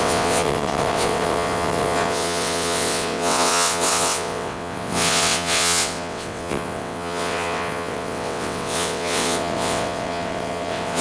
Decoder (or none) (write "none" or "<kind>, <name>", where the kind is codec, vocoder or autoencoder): vocoder, WaveNeXt